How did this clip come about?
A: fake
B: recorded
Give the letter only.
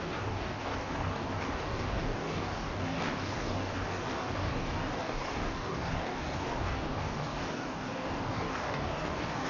A